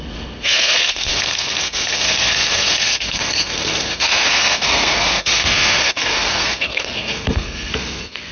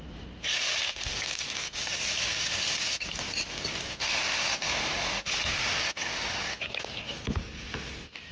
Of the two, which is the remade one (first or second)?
first